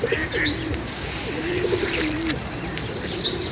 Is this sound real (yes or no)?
no